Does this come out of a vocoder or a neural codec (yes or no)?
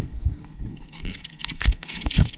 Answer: yes